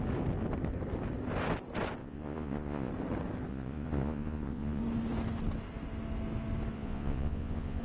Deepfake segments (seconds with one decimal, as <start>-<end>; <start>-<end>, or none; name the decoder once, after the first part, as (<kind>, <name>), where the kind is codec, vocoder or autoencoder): 2.0-2.9 (vocoder, Vocos); 3.5-4.8; 6.7-7.8